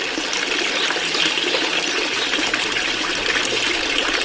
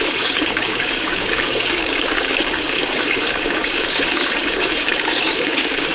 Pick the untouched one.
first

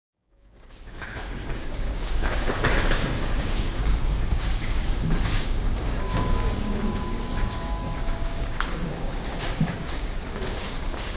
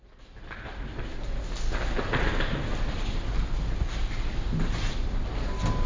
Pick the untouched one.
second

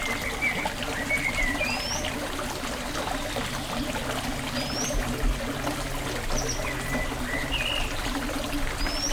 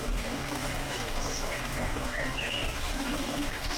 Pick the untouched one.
first